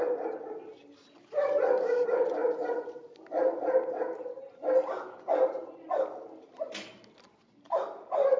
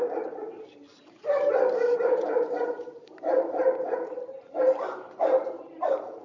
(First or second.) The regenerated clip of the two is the second